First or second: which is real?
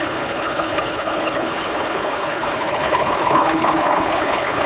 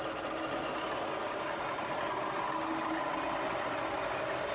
second